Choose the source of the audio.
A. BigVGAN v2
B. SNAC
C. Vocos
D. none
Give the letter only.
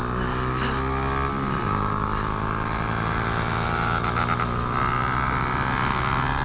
D